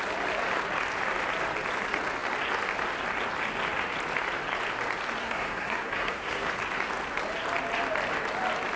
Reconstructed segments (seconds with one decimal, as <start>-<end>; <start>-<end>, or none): 5.2-6.5